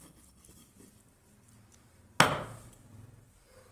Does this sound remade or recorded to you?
recorded